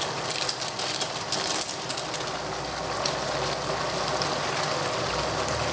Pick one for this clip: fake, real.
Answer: real